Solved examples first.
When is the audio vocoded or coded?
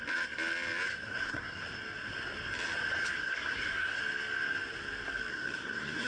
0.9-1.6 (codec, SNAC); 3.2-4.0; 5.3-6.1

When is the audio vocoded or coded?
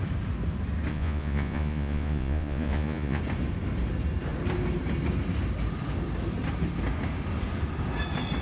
0.9-3.2 (vocoder, Vocos)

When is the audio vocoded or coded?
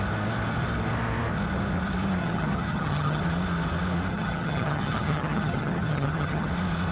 2.2-3.2 (vocoder, HiFi-GAN); 4.1-6.5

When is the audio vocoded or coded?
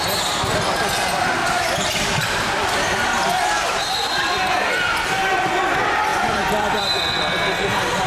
1.4-3.4 (vocoder, BigVGAN v2); 6.1-7.2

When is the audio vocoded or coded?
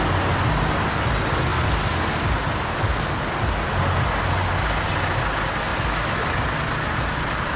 none